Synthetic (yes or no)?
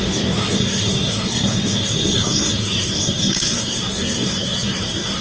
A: yes